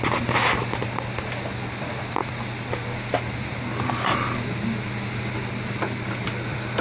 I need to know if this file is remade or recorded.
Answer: recorded